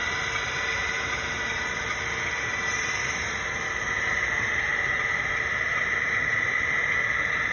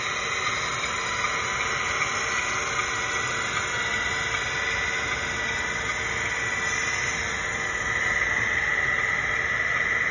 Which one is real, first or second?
second